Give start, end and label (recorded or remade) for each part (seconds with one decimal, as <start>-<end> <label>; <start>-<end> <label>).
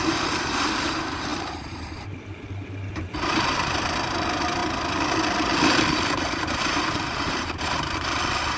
0.0-4.6 remade; 4.6-6.2 recorded; 6.2-8.6 remade